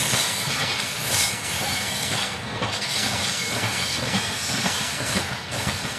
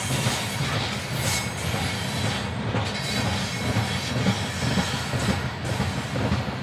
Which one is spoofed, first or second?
first